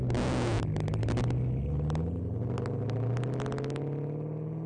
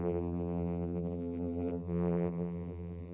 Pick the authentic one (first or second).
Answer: first